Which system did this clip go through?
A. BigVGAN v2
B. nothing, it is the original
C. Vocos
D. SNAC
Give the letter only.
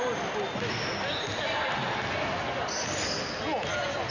B